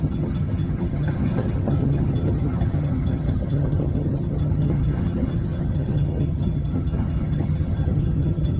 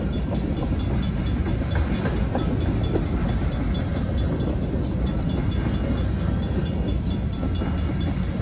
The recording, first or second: second